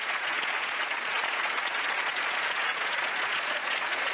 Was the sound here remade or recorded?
remade